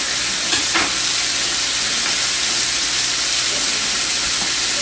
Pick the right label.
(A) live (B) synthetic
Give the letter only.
A